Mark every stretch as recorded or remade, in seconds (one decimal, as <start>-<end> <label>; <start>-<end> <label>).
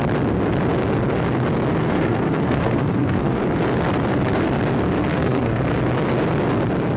0.0-1.8 recorded; 1.8-3.4 remade; 3.4-5.1 recorded; 5.1-5.6 remade; 5.6-7.0 recorded